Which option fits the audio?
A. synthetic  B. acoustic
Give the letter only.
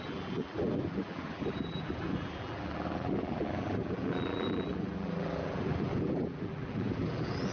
A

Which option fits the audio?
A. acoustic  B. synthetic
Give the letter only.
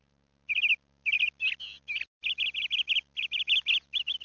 A